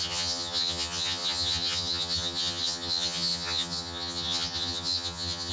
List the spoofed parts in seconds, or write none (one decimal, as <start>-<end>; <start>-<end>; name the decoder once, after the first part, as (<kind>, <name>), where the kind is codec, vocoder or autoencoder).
0.0-5.5 (vocoder, HiFi-GAN)